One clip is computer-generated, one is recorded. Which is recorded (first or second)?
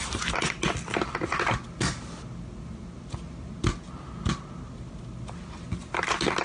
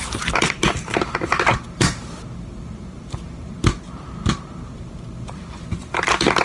first